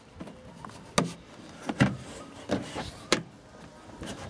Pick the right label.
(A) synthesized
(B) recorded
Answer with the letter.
B